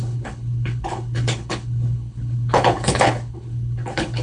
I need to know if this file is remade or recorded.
remade